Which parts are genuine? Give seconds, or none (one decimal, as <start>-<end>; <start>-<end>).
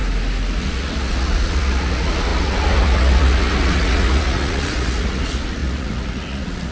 0.0-0.6